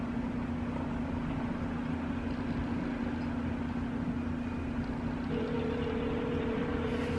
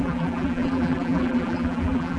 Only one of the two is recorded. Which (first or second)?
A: first